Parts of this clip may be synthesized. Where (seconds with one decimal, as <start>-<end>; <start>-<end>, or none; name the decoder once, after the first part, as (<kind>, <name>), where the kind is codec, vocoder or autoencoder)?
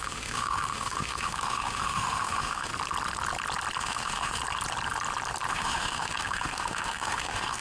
0.0-2.7 (autoencoder, DAC-VAE); 3.8-4.4; 5.5-7.6